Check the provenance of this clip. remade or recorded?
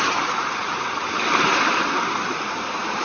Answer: remade